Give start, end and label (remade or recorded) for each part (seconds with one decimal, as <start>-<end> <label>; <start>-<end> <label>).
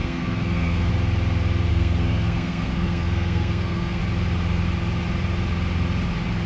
0.0-0.9 remade; 0.9-1.7 recorded; 1.7-4.0 remade; 4.0-6.5 recorded